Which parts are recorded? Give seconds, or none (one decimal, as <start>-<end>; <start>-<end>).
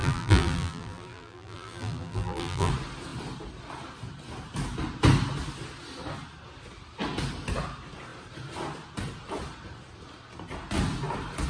2.7-11.5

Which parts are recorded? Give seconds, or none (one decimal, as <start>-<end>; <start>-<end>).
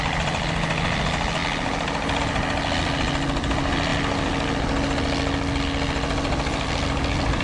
0.0-7.4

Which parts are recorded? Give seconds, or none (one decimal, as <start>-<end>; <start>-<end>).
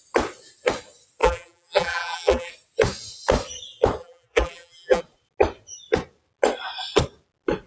0.0-1.2; 2.5-4.0; 5.0-7.7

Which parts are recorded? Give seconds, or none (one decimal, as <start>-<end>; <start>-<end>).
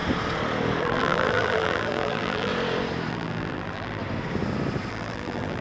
0.0-0.8; 2.5-3.1; 4.0-4.9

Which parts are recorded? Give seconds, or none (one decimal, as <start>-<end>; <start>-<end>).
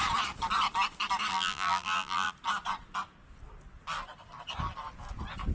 0.0-1.3; 2.3-5.5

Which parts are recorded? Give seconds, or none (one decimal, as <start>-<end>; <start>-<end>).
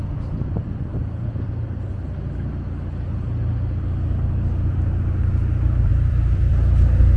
0.0-0.9; 2.5-5.9; 6.5-7.2